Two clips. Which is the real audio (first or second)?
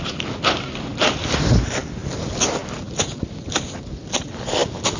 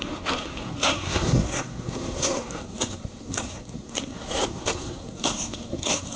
first